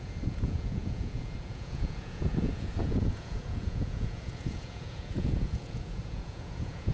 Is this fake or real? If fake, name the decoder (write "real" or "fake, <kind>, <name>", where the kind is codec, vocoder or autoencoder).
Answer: fake, vocoder, Vocos